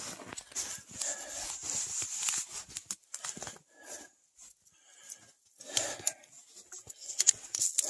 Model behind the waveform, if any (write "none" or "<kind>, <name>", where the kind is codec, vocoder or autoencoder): none